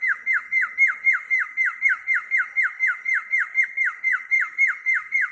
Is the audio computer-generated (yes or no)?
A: no